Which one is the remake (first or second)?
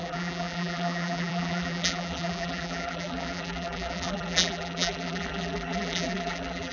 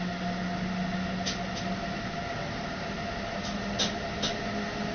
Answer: first